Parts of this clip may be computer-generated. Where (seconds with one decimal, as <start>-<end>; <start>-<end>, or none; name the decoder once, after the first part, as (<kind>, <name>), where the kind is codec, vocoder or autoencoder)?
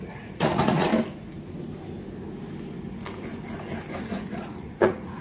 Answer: 0.0-0.9 (vocoder, Vocos); 4.0-5.2